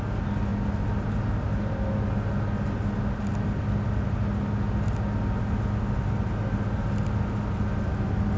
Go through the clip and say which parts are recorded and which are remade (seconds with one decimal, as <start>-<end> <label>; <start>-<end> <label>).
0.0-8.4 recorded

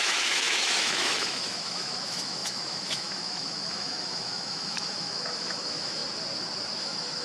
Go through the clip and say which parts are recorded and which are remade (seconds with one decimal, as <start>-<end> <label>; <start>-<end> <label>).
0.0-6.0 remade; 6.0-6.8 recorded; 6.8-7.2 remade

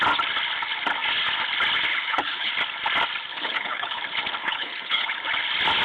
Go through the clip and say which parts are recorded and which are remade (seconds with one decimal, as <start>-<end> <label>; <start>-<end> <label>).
0.0-1.9 recorded; 1.9-2.5 remade; 2.5-3.3 recorded; 3.3-4.0 remade; 4.0-4.4 recorded; 4.4-5.2 remade; 5.2-5.8 recorded

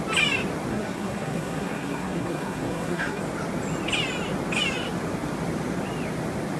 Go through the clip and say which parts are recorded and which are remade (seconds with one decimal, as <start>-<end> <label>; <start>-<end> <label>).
0.0-0.7 recorded; 0.7-3.2 remade; 3.2-6.6 recorded

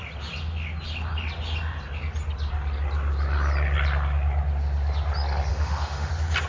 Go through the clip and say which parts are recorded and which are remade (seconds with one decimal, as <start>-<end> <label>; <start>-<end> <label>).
0.0-5.5 recorded; 5.5-6.1 remade; 6.1-6.5 recorded